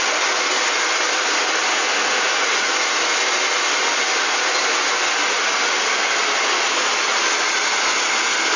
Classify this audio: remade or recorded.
recorded